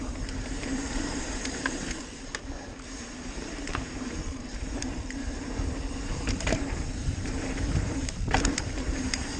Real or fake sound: fake